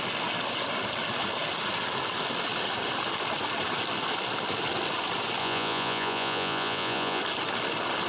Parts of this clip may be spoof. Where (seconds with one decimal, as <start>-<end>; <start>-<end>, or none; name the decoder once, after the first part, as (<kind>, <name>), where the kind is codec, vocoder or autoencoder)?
5.4-7.2 (vocoder, Vocos)